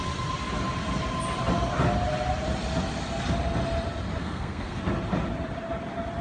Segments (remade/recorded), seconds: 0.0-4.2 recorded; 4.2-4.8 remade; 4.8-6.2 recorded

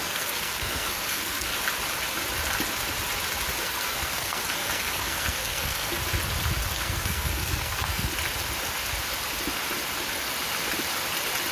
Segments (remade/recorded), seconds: 0.0-1.5 remade; 1.5-3.6 recorded; 3.6-6.0 remade; 6.0-6.7 recorded; 6.7-8.1 remade; 8.1-11.5 recorded

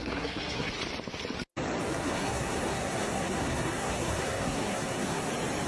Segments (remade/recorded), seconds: 0.0-0.7 remade; 0.7-1.9 recorded; 1.9-5.3 remade; 5.3-5.7 recorded